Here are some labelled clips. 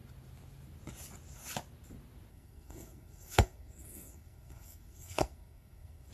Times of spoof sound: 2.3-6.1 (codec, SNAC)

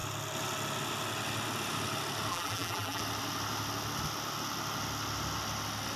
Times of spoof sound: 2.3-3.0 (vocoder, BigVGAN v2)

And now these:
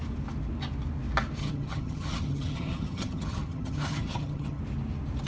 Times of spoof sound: 1.4-4.6 (vocoder, HiFi-GAN)

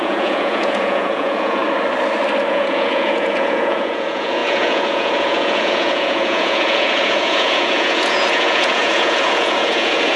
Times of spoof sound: 0.0-1.6 (vocoder, Vocos); 2.5-10.2